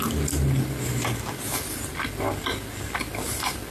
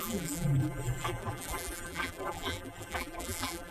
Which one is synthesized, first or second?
second